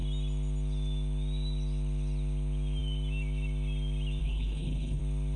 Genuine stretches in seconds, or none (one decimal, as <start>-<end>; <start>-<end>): 0.0-4.2; 5.0-5.4